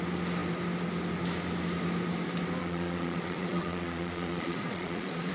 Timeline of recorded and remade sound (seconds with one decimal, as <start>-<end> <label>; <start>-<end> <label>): 0.0-2.6 recorded; 2.6-5.3 remade